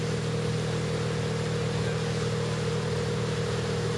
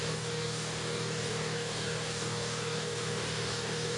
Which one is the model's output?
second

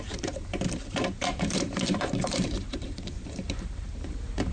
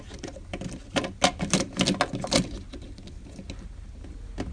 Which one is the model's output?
first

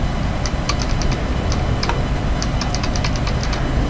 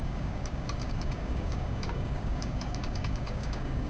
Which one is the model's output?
second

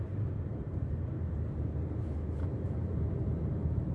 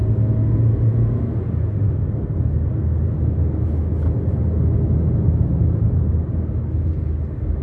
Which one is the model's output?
first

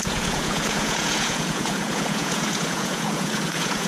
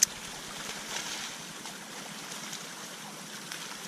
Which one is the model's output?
first